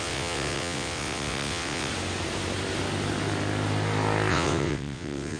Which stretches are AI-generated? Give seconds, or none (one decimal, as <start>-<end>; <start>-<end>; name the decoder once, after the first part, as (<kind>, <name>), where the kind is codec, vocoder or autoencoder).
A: 0.0-1.9 (vocoder, WaveNeXt); 4.3-5.4